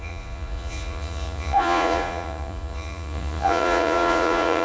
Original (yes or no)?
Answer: no